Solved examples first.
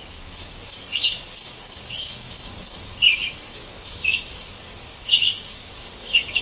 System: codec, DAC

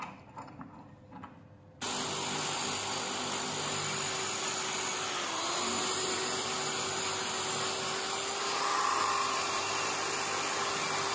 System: none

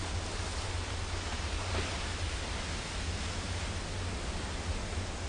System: none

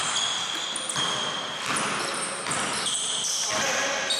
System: none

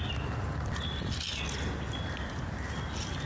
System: none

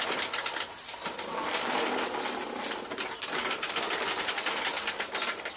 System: none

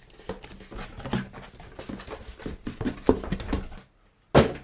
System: none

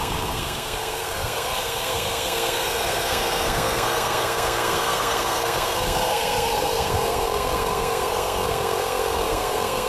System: codec, SNAC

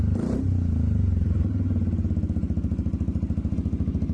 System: none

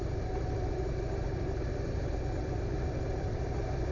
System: none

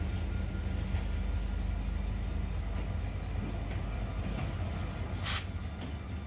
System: none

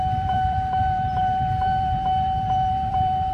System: vocoder, BigVGAN v2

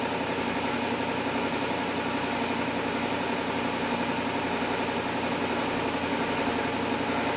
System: none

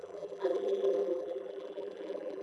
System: vocoder, BigVGAN v2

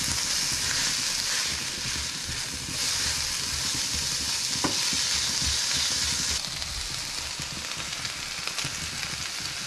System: none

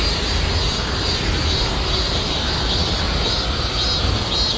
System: none